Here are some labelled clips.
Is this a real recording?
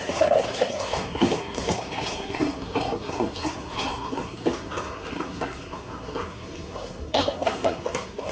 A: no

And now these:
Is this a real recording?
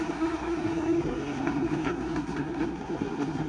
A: no